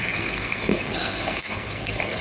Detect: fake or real fake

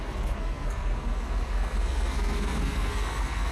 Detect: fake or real fake